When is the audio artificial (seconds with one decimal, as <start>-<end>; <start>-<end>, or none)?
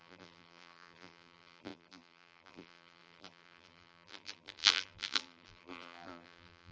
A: 0.0-6.7